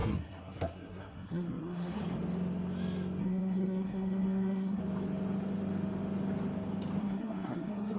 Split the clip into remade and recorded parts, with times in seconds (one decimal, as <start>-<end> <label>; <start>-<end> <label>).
0.0-2.0 remade; 2.0-3.2 recorded; 3.2-4.8 remade; 4.8-7.0 recorded; 7.0-8.0 remade